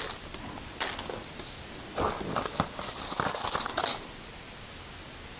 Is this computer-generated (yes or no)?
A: no